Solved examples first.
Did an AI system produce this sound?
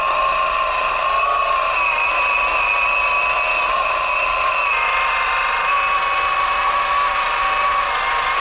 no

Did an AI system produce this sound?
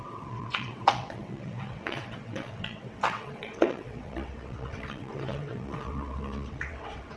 yes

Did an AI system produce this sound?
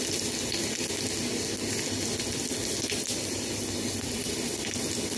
no